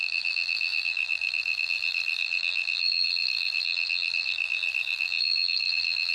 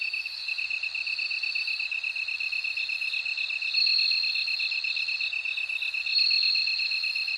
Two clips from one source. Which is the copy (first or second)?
first